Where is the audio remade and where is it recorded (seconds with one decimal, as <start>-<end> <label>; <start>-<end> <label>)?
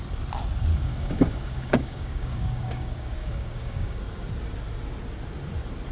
0.0-0.7 recorded; 0.7-4.0 remade; 4.0-5.9 recorded